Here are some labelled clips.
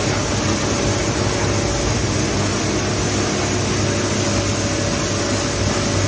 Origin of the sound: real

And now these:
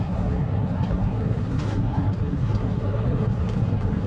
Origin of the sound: fake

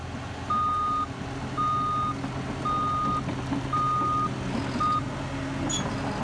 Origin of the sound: real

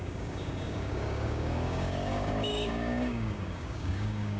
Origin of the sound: fake